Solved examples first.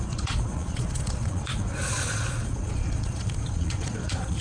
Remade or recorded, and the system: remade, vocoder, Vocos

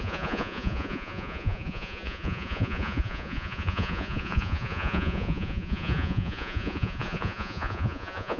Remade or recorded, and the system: remade, vocoder, Vocos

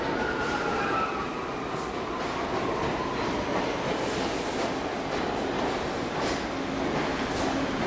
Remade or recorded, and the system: recorded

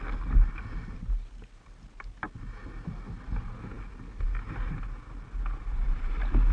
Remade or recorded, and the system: recorded